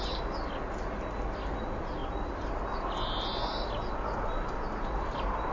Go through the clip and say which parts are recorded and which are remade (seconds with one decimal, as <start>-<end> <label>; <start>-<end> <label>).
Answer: 0.0-5.5 recorded